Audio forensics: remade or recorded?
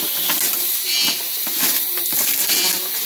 recorded